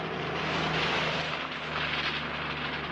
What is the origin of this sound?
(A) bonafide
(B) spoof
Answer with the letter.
A